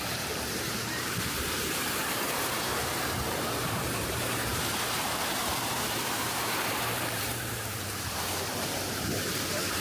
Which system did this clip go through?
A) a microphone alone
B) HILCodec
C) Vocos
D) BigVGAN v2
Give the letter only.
D